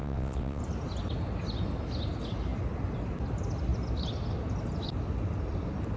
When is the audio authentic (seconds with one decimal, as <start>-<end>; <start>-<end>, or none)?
0.6-6.0